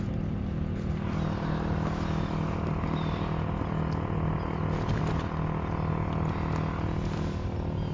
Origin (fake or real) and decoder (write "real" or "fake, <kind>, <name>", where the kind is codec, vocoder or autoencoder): real